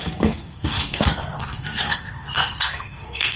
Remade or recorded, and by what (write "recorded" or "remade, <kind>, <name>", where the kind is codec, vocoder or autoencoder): remade, codec, SNAC